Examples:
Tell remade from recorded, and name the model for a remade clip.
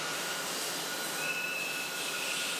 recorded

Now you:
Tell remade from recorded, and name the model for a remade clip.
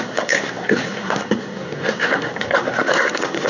remade, codec, SNAC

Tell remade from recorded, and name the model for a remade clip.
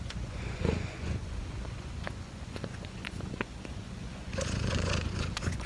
remade, vocoder, Vocos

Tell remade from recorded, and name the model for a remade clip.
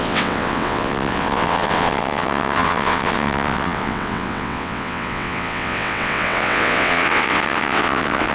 remade, vocoder, WaveNeXt